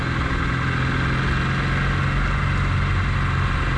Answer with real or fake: real